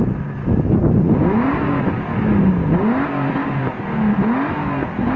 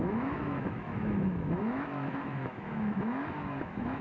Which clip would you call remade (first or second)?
second